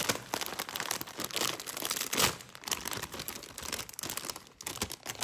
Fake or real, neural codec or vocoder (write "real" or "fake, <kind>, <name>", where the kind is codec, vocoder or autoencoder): real